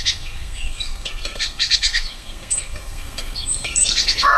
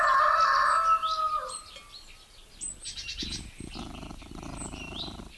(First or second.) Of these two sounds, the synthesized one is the first